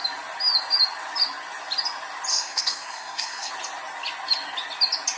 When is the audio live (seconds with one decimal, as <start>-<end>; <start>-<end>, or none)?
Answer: 0.0-2.3; 3.5-5.2